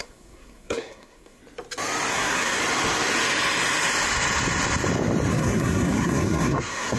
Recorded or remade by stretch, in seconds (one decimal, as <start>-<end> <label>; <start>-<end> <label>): 0.0-1.4 remade; 1.4-2.1 recorded; 2.1-2.6 remade; 2.6-5.3 recorded; 5.3-7.0 remade